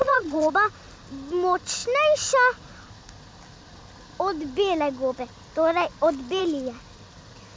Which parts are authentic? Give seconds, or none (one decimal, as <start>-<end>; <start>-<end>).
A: 0.5-7.6